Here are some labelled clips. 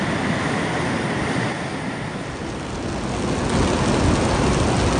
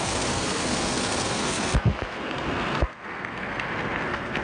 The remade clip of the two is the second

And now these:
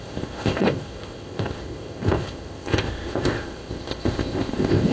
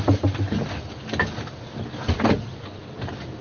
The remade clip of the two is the first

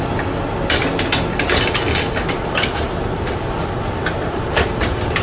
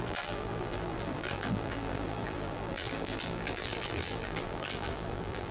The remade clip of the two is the second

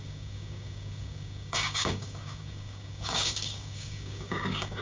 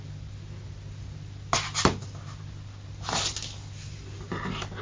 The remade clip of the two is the first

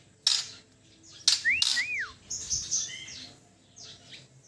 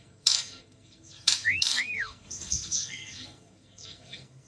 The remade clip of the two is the second